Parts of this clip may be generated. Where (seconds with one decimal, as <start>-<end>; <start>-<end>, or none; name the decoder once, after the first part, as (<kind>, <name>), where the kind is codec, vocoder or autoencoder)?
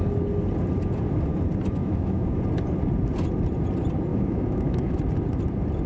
1.8-2.4 (autoencoder, DAC-VAE); 4.1-5.0